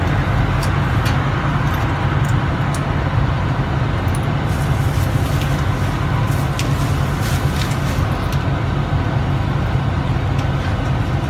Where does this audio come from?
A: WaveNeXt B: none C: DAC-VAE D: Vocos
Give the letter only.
B